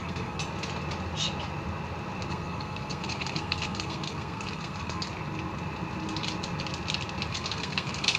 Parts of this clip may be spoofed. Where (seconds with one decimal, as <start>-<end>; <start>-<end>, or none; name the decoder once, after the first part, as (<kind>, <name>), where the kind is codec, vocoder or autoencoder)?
0.0-0.4 (codec, SNAC); 2.3-5.1; 7.3-8.2